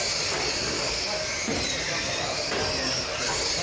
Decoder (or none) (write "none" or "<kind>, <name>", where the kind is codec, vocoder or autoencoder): none